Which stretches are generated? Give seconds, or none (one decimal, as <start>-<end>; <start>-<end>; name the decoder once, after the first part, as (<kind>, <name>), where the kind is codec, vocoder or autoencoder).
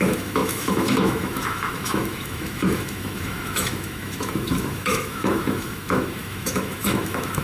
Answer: 0.0-7.4 (autoencoder, DAC-VAE)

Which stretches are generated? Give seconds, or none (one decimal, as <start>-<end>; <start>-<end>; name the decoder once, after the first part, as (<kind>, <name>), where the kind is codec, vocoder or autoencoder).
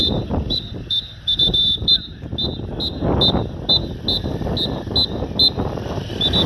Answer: 0.0-2.3 (vocoder, BigVGAN v2)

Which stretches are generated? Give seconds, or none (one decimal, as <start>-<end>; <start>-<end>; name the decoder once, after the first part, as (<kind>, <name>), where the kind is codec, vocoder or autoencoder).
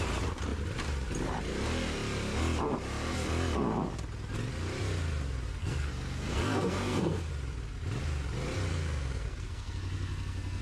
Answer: 5.6-7.3 (codec, SNAC); 8.7-10.6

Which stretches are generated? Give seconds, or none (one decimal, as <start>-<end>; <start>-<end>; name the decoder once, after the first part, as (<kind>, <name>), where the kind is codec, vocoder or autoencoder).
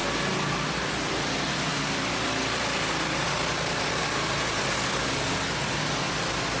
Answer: none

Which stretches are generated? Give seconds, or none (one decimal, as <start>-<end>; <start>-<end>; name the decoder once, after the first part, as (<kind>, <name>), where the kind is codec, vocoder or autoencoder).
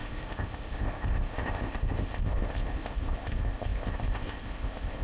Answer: 0.0-5.0 (codec, ZipCodec)